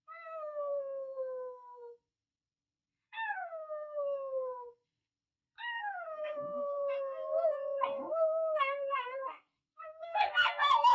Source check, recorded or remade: remade